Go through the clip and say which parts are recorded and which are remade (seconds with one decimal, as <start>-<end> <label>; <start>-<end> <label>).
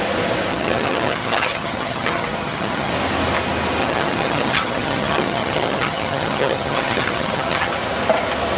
0.0-0.5 recorded; 0.5-2.9 remade; 2.9-3.8 recorded; 3.8-7.7 remade; 7.7-8.6 recorded